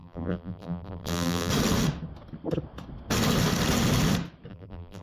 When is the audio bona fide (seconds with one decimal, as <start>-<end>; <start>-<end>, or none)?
1.5-4.5